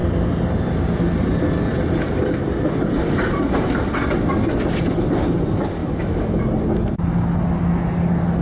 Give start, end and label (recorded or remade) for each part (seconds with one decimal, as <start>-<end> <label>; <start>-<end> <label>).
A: 0.0-5.8 recorded; 5.8-6.4 remade; 6.4-8.4 recorded